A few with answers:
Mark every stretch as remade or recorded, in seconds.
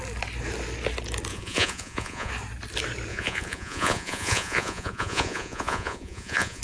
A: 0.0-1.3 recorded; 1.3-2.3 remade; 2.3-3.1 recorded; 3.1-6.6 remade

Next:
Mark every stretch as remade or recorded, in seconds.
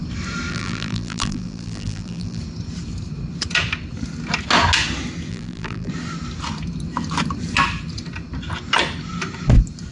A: 0.0-0.5 recorded; 0.5-2.4 remade; 2.4-5.3 recorded; 5.3-5.9 remade; 5.9-9.9 recorded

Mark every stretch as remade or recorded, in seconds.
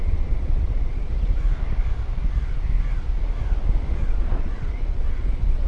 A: 0.0-1.1 remade; 1.1-4.0 recorded; 4.0-5.7 remade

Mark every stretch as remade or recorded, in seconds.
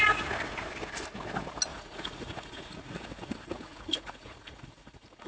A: 0.0-1.7 recorded; 1.7-5.3 remade